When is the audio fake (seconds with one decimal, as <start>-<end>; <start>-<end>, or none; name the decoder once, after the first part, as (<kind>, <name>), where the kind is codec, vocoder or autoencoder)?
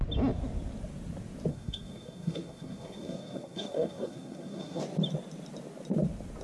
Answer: 1.5-4.8 (codec, SNAC)